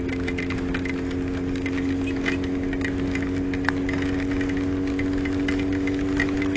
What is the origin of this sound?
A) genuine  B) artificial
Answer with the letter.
A